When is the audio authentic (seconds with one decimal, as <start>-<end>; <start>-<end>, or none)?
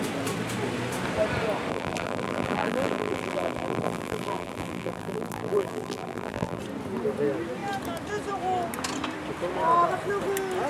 0.0-1.7; 6.6-10.7